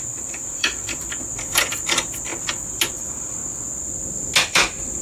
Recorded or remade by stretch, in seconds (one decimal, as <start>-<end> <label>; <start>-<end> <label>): 0.0-3.4 remade; 3.4-4.4 recorded; 4.4-5.0 remade